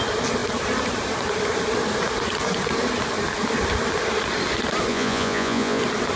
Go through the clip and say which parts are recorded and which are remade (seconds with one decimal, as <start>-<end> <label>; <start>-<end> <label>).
0.0-4.9 recorded; 4.9-5.8 remade; 5.8-6.2 recorded